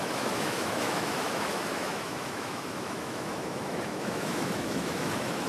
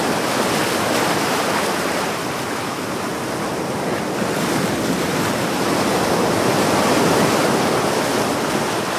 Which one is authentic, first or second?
second